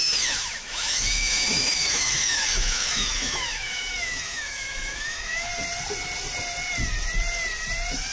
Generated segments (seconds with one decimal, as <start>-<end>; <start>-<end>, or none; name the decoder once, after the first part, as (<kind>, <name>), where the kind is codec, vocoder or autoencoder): 0.0-5.5 (autoencoder, DAC-VAE)